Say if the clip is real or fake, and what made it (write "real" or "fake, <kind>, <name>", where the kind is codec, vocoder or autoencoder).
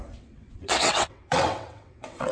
fake, vocoder, WaveNeXt